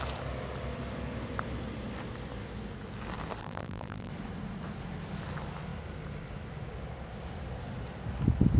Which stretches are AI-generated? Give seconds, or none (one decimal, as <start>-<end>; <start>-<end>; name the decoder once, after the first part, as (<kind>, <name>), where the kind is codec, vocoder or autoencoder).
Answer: 3.4-4.1 (vocoder, BigVGAN v2)